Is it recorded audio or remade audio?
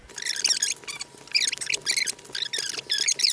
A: recorded